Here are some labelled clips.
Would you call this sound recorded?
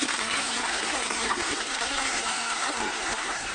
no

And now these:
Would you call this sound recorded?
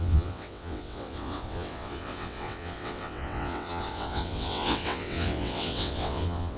no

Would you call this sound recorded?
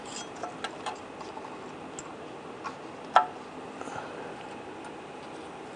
yes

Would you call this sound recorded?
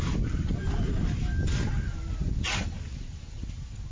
yes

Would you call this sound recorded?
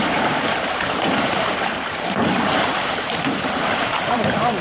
no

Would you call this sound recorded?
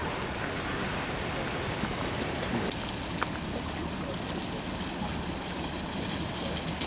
yes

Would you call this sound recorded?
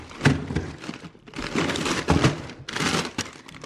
no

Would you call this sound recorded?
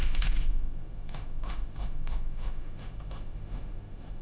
no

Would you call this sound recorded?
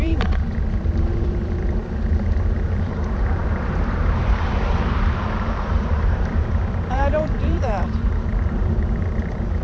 no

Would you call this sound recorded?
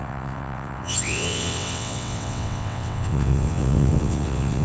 no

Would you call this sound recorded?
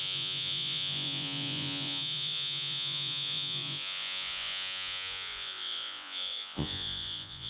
no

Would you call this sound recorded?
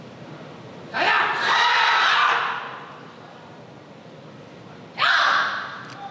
no